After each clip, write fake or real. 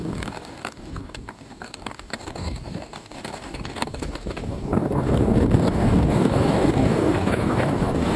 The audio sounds fake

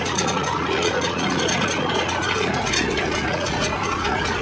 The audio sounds fake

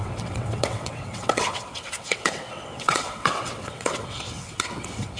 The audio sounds fake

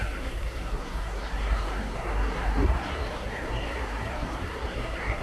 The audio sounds fake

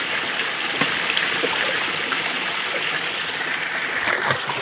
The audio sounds fake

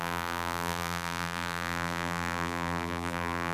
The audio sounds fake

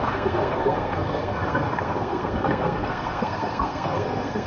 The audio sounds fake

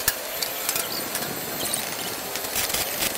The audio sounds real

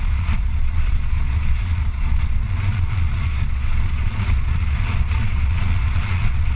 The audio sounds fake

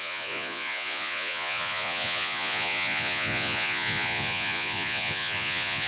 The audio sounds fake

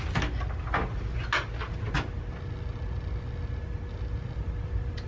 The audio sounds real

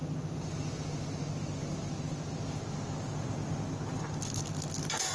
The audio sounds real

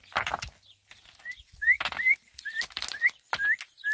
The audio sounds real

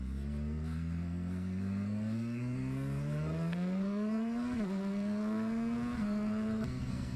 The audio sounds fake